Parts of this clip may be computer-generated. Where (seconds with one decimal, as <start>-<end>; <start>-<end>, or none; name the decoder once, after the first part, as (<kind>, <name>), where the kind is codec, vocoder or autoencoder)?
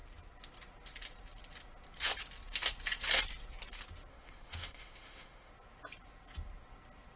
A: 4.1-5.5 (autoencoder, DAC-VAE)